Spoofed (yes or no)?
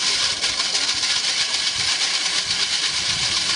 no